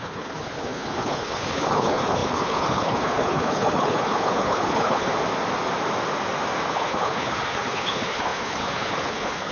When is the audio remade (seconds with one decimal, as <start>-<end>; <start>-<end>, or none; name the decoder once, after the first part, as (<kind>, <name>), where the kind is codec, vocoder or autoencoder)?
0.0-5.1 (codec, HILCodec); 6.7-9.5